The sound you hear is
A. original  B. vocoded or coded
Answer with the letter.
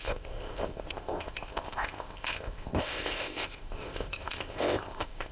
B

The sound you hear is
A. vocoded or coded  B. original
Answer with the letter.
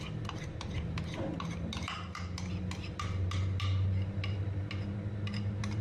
B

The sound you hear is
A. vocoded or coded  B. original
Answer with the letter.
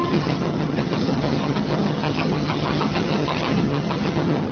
A